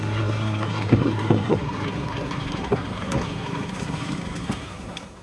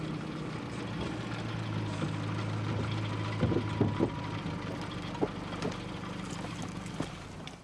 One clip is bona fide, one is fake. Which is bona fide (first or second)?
second